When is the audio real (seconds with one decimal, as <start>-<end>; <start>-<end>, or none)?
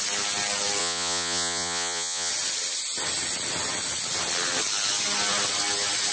0.0-0.8; 2.3-6.1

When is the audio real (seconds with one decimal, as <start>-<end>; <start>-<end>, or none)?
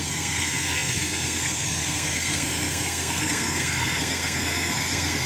none